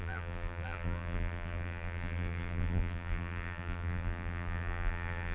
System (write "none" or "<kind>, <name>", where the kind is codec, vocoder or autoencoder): vocoder, BigVGAN v2